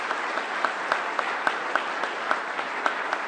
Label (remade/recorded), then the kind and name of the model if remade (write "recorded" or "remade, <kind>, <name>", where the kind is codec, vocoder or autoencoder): recorded